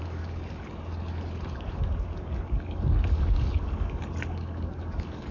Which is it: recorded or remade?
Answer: remade